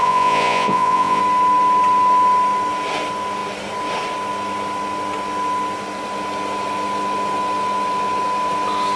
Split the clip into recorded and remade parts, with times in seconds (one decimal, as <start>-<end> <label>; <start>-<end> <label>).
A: 0.0-1.2 remade; 1.2-9.0 recorded